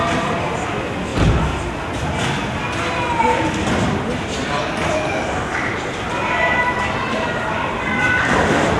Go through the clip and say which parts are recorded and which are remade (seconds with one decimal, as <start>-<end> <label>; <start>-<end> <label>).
0.0-8.8 recorded